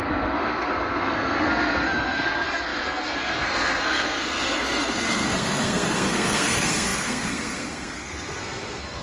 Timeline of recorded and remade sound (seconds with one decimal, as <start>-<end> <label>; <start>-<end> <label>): 0.0-9.0 remade